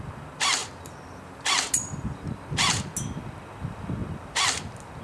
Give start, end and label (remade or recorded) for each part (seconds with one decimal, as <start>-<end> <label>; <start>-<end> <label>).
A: 0.0-5.0 recorded